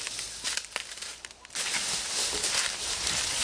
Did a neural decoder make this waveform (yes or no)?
no